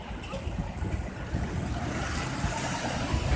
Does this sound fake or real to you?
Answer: real